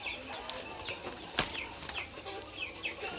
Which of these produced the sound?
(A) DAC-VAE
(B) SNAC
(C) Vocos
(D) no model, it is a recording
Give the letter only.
D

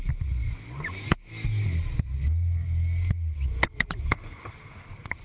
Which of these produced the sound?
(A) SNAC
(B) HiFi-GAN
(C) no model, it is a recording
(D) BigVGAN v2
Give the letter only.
C